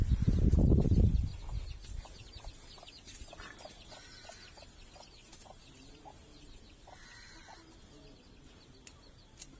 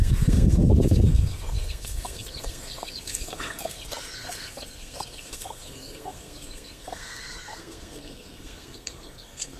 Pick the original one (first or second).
first